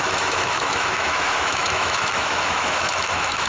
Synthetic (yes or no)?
yes